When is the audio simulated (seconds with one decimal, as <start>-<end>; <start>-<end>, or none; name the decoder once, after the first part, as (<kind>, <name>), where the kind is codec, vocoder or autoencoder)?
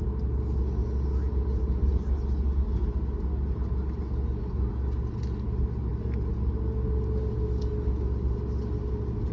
none